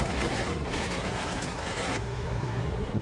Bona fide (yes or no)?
no